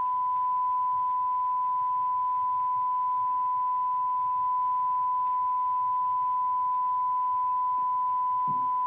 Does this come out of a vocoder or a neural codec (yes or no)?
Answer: no